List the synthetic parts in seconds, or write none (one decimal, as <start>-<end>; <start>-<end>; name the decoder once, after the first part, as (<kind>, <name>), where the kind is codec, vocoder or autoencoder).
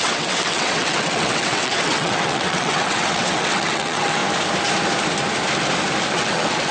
0.0-4.2 (vocoder, WaveNeXt); 6.1-6.7